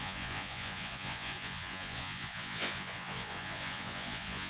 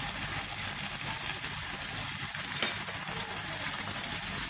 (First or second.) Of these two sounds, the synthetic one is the first